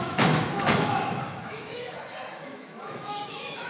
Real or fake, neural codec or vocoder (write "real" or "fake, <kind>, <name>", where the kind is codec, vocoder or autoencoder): fake, autoencoder, DAC-VAE